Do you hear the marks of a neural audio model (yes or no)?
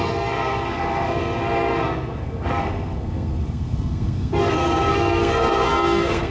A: yes